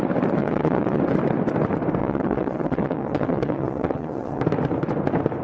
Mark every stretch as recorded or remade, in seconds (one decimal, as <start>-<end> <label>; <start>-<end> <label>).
0.0-0.4 recorded; 0.4-1.0 remade; 1.0-2.0 recorded; 2.0-4.4 remade; 4.4-5.4 recorded